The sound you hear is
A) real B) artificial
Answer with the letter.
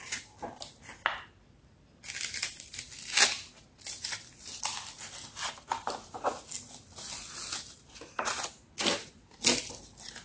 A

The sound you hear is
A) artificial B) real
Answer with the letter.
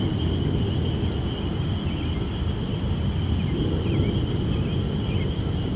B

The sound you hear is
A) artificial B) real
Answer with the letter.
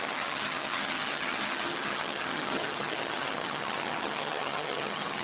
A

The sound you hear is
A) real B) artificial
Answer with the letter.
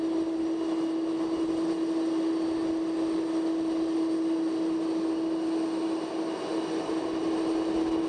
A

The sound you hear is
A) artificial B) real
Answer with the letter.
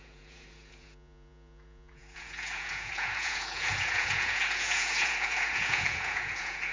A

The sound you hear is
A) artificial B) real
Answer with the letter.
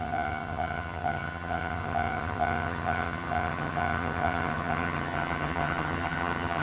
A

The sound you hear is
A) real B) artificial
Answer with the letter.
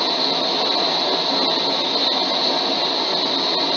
A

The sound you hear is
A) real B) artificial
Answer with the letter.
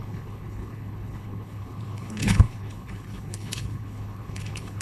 B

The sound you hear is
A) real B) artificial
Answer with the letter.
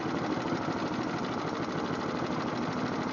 A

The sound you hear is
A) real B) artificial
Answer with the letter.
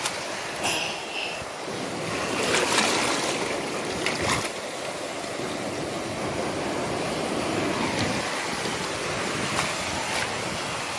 A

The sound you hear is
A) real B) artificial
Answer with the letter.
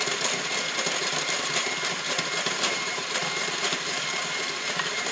B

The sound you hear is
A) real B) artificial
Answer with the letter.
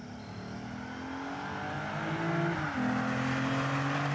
A